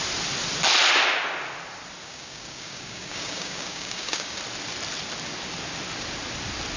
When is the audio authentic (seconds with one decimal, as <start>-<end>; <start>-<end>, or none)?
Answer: 0.0-2.0; 4.4-6.8